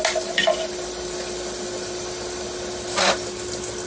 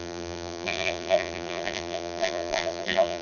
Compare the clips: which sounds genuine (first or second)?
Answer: first